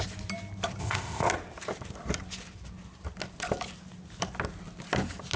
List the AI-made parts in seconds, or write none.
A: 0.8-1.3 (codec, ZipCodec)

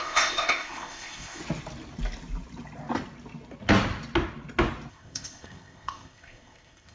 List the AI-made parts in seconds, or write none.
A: 0.0-1.4 (codec, ZipCodec); 4.9-6.9

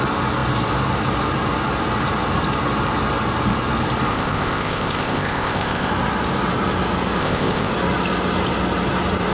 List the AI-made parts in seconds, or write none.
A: 4.1-5.9 (codec, ZipCodec); 7.2-7.7

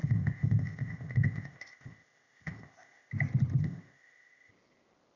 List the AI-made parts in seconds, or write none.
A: 0.0-3.1 (codec, ZipCodec); 3.6-4.5

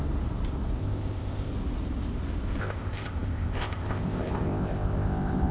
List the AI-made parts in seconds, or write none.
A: 0.8-1.5 (codec, ZipCodec); 2.6-5.5

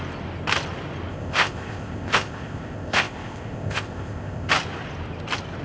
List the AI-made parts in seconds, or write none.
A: 1.1-4.5 (codec, ZipCodec)